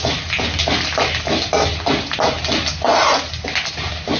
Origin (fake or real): real